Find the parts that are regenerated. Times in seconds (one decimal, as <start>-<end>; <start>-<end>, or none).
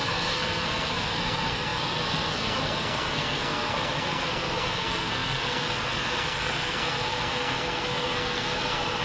0.0-9.0